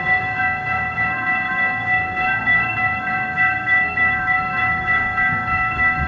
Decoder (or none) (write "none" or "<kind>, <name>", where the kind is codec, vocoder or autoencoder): codec, SNAC